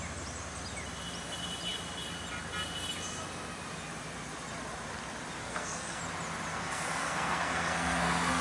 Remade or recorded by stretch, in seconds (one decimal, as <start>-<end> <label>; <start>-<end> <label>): 0.0-5.4 recorded; 5.4-6.0 remade; 6.0-6.5 recorded; 6.5-8.4 remade